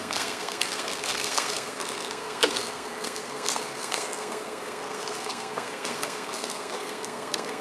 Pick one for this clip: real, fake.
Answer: fake